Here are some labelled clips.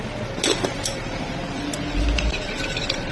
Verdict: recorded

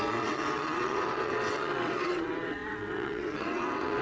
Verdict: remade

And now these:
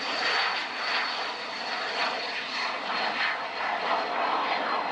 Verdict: recorded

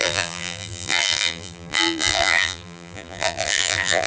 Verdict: remade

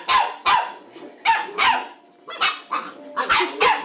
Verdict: recorded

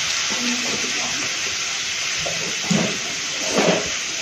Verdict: recorded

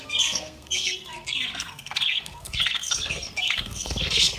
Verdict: remade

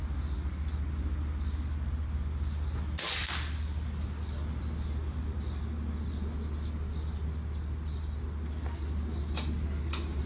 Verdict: recorded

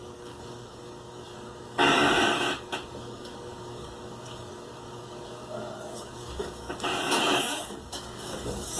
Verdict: remade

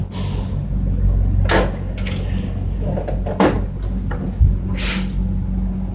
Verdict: recorded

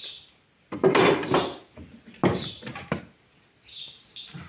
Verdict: recorded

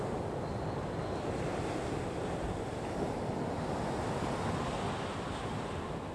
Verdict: recorded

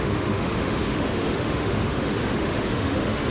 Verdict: remade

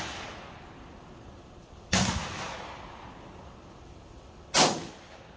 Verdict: recorded